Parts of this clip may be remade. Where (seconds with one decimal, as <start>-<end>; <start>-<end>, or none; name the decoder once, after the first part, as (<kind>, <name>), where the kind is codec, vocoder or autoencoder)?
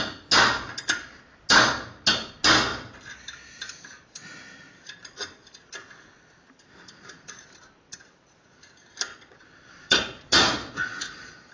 9.1-11.5 (vocoder, Vocos)